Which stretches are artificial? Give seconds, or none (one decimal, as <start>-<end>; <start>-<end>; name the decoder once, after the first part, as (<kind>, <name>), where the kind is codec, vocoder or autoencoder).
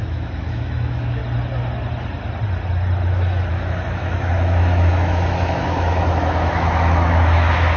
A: 0.0-1.2 (autoencoder, DAC-VAE); 3.5-7.8